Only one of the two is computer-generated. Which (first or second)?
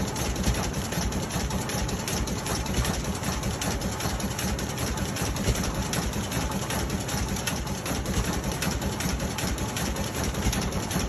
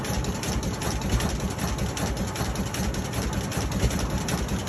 first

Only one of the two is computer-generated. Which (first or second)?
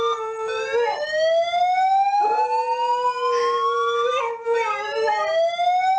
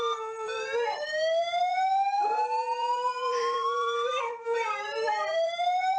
second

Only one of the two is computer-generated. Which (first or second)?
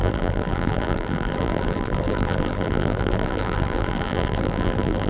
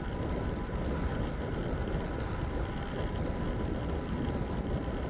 first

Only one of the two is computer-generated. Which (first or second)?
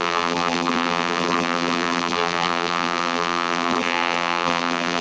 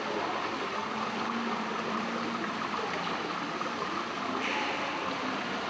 first